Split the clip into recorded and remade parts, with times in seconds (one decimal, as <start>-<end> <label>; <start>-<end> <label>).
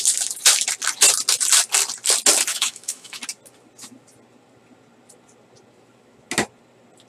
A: 0.0-2.5 recorded; 2.5-3.2 remade; 3.2-7.1 recorded